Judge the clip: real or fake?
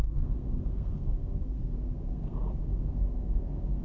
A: fake